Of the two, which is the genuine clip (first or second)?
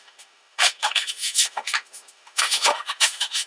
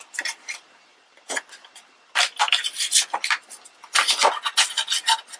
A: second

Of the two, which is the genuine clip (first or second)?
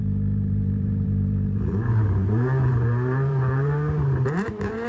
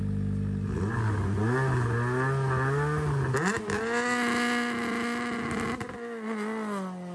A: second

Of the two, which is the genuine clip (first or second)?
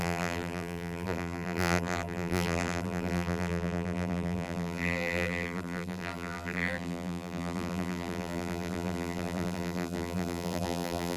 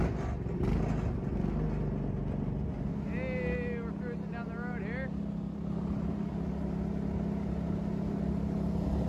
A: second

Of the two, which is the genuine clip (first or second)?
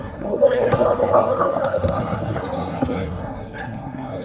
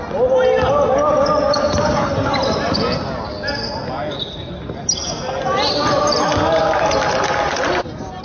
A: second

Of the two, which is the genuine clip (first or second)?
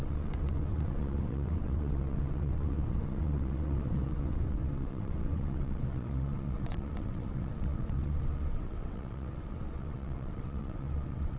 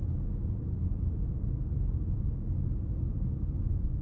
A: second